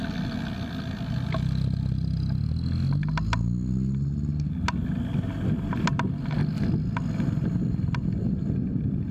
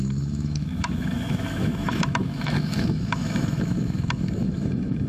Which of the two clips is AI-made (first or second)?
second